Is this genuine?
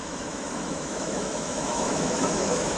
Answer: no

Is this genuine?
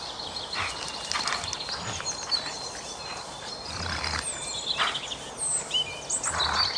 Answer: yes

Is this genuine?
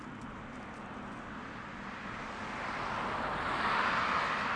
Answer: yes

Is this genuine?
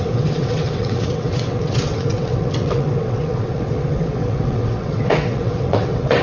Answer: no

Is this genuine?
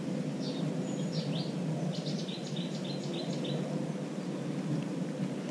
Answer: yes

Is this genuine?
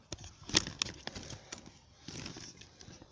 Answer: yes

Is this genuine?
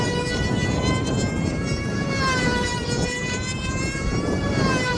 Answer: no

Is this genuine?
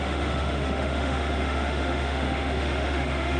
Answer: no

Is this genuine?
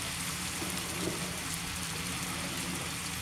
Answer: yes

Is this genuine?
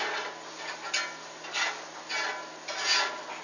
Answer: yes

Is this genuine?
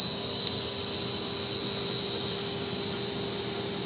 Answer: yes